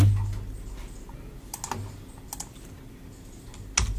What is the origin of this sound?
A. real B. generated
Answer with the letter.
A